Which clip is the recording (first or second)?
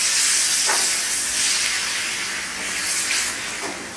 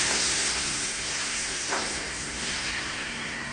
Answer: first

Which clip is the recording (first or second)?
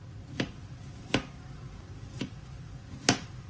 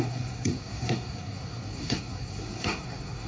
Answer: first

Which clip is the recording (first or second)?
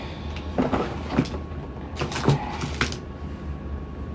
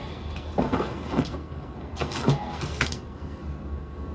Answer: first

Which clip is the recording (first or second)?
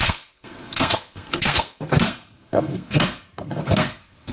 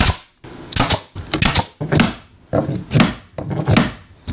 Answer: second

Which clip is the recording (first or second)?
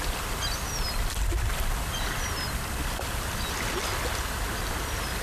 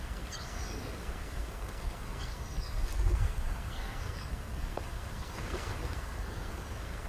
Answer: first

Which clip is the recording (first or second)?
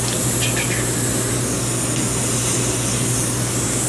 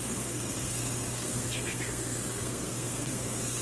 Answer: first